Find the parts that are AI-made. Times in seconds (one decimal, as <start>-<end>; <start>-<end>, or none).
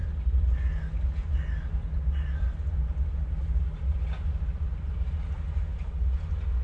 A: none